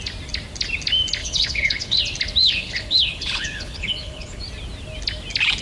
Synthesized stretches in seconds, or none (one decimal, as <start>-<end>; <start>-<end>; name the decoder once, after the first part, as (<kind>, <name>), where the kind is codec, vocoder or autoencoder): 1.2-2.0 (codec, HILCodec); 2.4-4.4